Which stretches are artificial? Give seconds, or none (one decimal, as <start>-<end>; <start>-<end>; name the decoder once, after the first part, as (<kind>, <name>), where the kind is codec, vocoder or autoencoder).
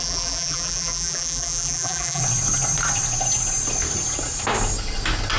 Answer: 0.0-2.2 (vocoder, BigVGAN v2)